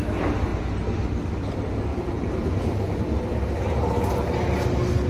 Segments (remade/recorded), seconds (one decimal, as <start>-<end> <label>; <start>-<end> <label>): 0.0-1.9 recorded; 1.9-3.1 remade; 3.1-5.1 recorded